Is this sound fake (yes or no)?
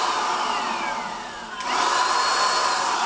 no